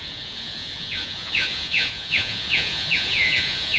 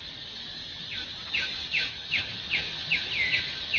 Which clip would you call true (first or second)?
second